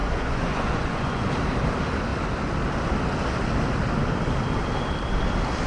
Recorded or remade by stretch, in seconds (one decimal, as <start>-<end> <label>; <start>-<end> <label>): 0.0-1.3 remade; 1.3-5.7 recorded